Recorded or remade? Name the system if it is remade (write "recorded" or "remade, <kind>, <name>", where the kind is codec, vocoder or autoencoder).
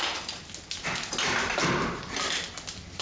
recorded